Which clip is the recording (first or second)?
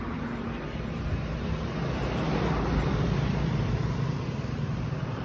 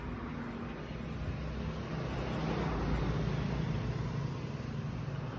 second